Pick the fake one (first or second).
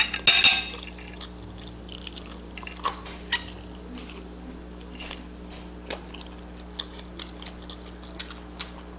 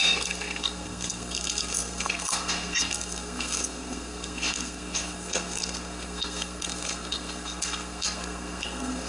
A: second